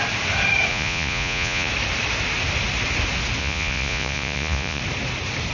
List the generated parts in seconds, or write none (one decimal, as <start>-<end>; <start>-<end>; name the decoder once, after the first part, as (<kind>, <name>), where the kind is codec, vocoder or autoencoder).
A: 0.7-1.7 (vocoder, Vocos); 3.4-4.8